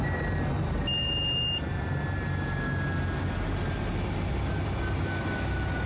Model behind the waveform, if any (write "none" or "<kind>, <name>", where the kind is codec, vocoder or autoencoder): none